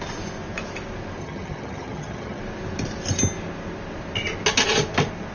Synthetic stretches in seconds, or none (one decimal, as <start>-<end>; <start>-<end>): 1.2-2.4